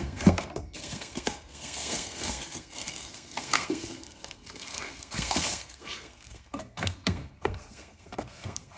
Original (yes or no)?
no